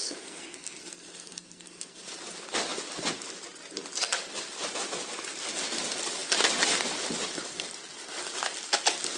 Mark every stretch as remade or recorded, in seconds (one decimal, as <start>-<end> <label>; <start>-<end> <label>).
0.0-2.0 remade; 2.0-9.2 recorded